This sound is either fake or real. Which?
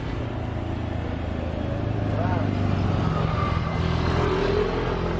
real